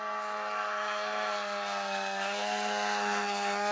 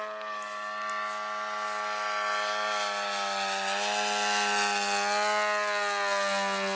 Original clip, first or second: second